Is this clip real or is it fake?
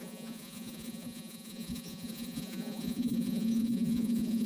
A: fake